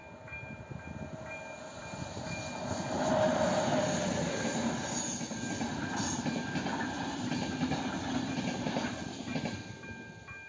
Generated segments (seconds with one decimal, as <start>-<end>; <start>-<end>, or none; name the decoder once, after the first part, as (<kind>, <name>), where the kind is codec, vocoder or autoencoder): none